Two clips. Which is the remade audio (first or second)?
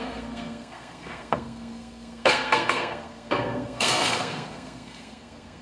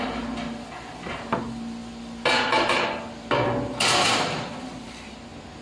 first